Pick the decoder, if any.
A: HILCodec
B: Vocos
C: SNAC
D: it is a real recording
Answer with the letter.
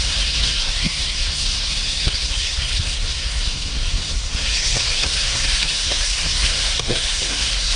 C